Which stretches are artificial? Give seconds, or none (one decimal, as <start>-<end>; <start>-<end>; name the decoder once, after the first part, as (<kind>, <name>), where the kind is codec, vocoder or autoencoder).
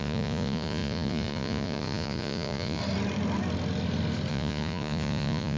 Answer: 0.0-2.8 (vocoder, Vocos); 4.3-5.6